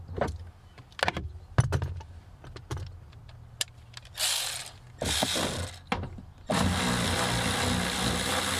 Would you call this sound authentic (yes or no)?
yes